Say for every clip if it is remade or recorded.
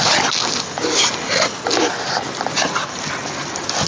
recorded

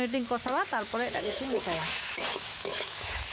remade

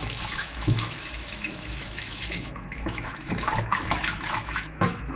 remade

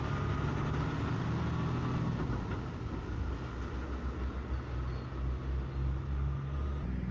recorded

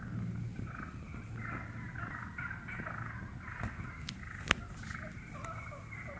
recorded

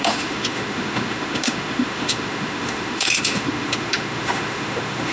remade